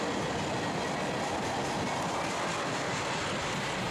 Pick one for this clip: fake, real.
real